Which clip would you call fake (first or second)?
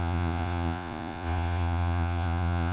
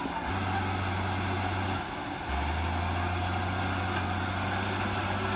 first